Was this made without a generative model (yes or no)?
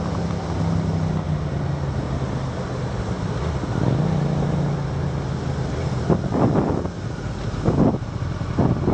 yes